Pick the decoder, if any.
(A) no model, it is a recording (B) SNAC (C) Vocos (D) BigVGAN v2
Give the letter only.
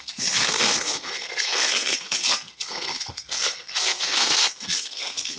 B